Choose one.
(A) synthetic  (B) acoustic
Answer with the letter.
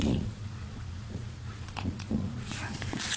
A